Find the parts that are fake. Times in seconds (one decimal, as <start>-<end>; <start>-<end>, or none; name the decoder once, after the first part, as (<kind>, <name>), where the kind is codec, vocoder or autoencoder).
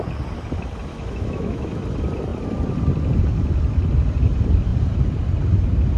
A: 0.9-1.8 (autoencoder, DAC-VAE)